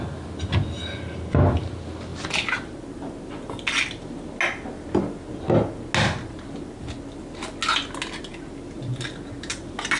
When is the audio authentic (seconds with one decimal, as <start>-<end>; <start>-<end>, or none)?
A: 0.0-10.0